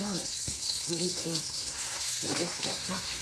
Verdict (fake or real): fake